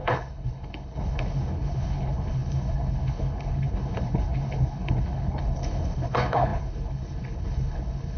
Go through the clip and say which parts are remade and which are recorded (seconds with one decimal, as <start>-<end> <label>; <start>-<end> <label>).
0.0-8.2 remade